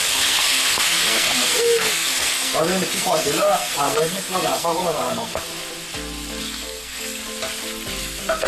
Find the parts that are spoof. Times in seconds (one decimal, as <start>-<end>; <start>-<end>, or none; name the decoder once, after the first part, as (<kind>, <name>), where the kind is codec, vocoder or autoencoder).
0.0-5.5 (codec, SNAC); 6.4-7.2; 8.0-8.5